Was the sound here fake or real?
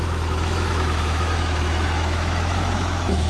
fake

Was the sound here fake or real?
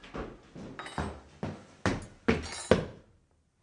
real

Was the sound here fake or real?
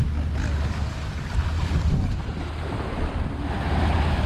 real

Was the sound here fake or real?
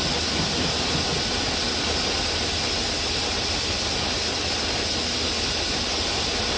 real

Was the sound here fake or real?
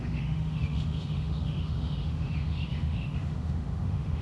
fake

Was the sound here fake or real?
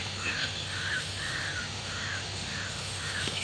fake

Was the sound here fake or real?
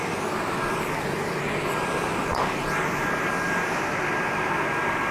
real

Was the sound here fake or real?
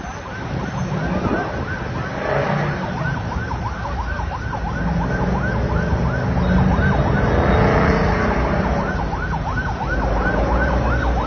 real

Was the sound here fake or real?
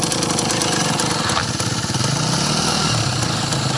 real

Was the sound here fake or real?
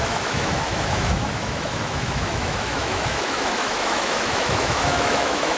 fake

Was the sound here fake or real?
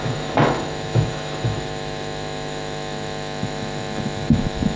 fake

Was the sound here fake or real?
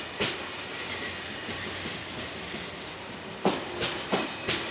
real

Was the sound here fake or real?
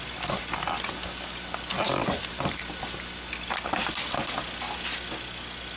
real